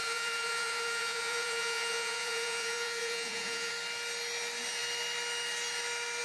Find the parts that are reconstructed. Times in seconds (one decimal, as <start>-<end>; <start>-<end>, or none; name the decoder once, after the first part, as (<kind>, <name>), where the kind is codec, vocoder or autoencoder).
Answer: 0.0-3.7 (vocoder, Vocos)